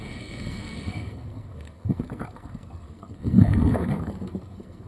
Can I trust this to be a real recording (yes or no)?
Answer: no